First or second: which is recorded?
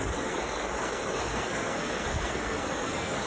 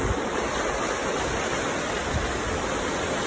second